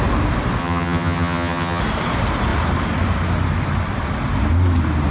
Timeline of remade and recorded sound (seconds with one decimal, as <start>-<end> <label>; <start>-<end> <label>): 0.0-0.6 recorded; 0.6-1.8 remade; 1.8-5.1 recorded